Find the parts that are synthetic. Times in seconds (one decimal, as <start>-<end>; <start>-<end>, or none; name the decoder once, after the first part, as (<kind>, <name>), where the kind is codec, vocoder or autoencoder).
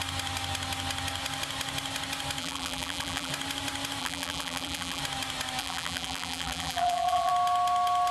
2.4-3.3 (vocoder, BigVGAN v2); 4.0-5.0; 5.6-7.3